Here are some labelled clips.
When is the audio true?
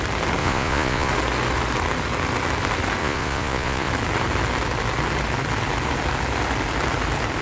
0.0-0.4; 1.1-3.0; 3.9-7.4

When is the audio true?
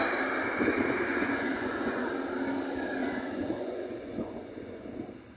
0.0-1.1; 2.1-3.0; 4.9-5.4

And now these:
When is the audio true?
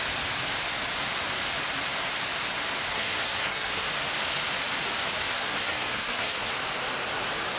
0.0-2.9; 3.9-5.3; 6.5-7.6